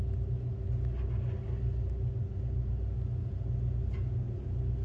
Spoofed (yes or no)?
no